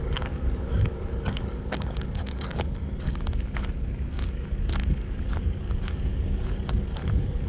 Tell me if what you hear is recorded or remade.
remade